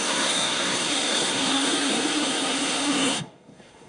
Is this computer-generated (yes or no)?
yes